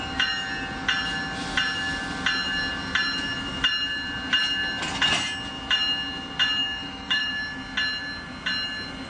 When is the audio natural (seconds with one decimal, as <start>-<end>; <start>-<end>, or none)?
0.0-6.6; 7.3-9.1